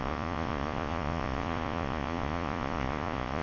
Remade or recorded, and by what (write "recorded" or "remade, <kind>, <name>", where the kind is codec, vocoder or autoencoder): remade, vocoder, Vocos